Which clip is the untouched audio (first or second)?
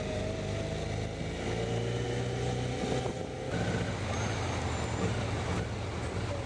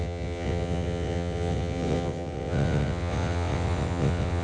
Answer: first